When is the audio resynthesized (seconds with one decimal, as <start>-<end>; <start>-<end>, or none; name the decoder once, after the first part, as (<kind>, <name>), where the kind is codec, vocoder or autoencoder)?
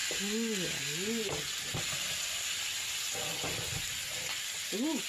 0.0-1.3 (vocoder, BigVGAN v2)